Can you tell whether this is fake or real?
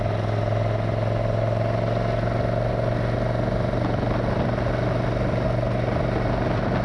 real